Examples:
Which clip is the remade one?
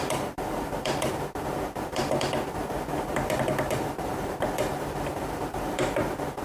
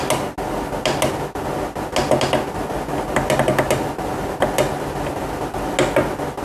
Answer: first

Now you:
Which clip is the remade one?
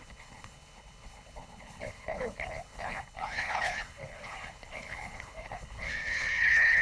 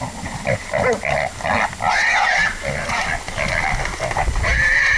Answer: first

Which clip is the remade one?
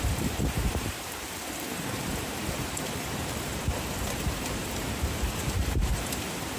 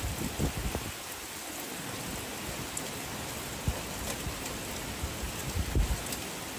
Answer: first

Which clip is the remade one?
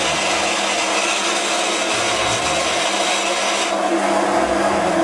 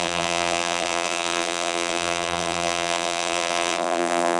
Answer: second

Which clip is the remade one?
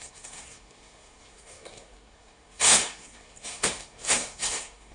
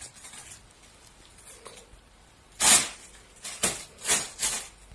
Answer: first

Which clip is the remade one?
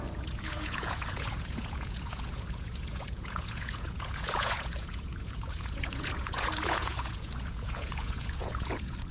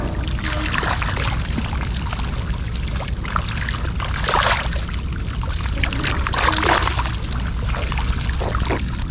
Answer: first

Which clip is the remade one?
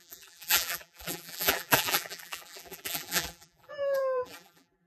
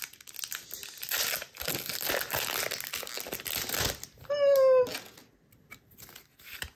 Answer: first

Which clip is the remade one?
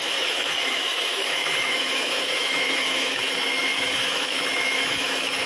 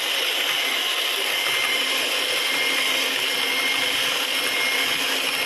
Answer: first